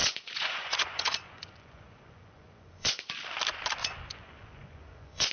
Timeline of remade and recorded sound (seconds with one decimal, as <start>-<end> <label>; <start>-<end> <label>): 0.0-3.1 remade; 3.1-3.8 recorded; 3.8-5.3 remade